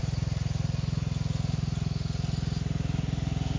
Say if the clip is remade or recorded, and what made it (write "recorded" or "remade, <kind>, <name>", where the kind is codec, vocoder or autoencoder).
recorded